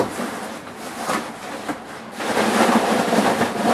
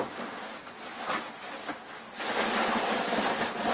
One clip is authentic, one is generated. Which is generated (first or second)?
first